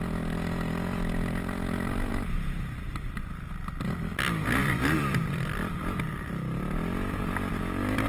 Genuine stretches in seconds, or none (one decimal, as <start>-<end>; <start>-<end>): 0.0-2.1; 3.2-4.6; 6.0-8.1